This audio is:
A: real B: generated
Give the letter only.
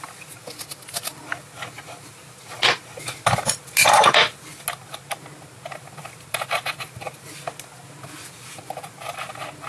A